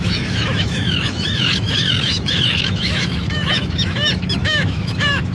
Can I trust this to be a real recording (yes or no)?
no